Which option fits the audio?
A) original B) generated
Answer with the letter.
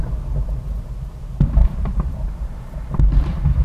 A